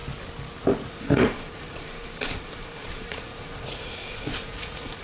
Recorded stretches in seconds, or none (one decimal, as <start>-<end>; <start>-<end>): 0.0-0.9